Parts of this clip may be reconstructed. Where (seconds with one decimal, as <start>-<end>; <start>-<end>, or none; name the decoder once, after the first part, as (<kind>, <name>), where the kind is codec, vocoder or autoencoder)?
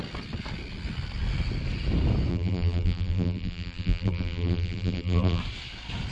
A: 2.3-5.4 (vocoder, BigVGAN v2)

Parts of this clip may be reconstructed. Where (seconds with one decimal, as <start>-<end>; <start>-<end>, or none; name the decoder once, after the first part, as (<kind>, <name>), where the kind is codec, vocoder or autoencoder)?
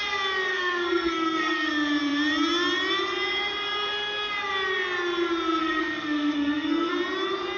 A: 0.5-1.7 (codec, SNAC); 5.6-6.9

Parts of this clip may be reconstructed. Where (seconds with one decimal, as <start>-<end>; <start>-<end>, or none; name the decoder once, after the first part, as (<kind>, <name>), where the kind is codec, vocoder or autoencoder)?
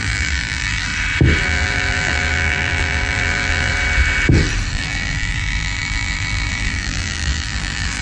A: 0.0-0.9 (vocoder, BigVGAN v2); 1.4-3.7; 4.7-8.0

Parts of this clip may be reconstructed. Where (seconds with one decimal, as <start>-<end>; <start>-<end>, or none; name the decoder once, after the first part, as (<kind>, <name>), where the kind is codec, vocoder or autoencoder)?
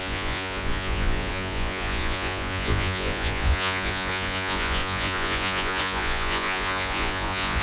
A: 0.0-7.6 (vocoder, Vocos)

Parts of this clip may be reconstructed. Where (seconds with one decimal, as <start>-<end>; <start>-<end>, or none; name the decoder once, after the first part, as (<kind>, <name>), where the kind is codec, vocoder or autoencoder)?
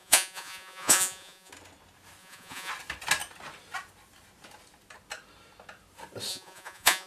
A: 0.0-1.5 (vocoder, Vocos); 2.2-2.7; 6.3-7.1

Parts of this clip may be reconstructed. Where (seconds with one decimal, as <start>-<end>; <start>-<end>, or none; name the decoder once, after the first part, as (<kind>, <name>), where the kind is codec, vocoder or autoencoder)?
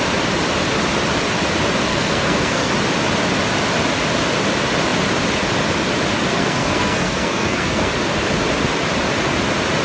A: 1.9-2.7 (codec, SNAC); 6.3-7.9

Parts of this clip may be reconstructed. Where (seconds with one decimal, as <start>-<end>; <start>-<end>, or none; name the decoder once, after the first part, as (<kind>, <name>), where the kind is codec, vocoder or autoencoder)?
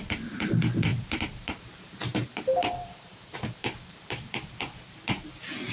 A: 0.9-4.3 (vocoder, BigVGAN v2)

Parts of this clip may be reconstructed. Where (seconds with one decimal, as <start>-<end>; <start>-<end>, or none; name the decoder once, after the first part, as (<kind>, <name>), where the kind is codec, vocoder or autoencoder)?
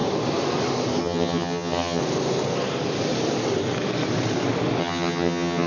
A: 1.0-2.0 (vocoder, HiFi-GAN); 4.8-5.7